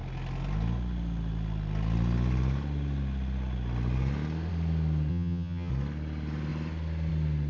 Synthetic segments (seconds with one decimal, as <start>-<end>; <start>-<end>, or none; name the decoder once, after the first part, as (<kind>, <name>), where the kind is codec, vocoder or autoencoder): 5.1-5.7 (vocoder, HiFi-GAN)